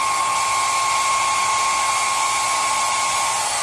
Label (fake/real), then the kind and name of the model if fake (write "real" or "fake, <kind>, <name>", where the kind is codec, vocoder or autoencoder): real